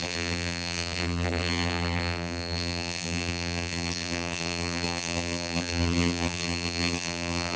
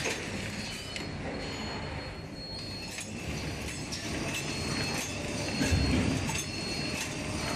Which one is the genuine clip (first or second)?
second